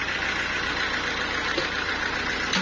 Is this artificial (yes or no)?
no